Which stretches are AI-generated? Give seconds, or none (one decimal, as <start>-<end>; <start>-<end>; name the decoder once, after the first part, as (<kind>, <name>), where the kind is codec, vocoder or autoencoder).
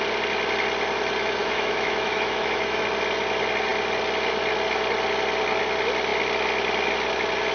1.4-2.8 (autoencoder, DAC-VAE)